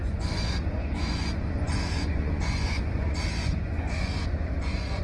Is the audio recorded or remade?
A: remade